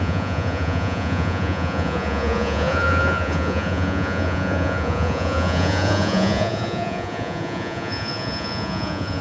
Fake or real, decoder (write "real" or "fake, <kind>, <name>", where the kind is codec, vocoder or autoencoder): fake, vocoder, Vocos